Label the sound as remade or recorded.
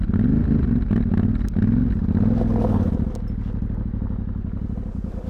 recorded